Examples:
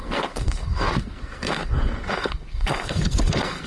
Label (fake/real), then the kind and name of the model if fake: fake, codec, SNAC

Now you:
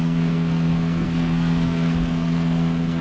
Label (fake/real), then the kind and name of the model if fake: fake, codec, SNAC